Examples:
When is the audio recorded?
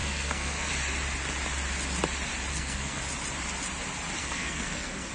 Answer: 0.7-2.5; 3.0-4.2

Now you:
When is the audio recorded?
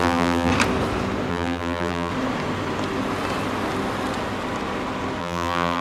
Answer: 0.5-1.3; 2.1-5.2